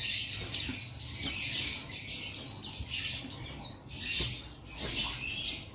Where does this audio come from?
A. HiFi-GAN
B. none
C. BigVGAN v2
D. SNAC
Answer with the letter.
B